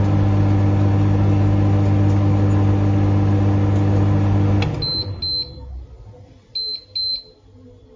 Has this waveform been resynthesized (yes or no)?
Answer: no